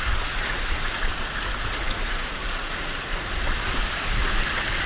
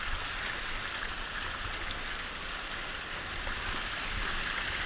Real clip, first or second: second